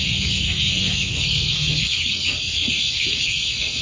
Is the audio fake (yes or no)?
yes